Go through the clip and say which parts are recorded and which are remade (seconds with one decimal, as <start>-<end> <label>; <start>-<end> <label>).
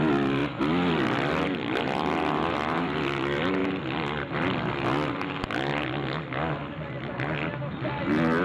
0.0-8.4 recorded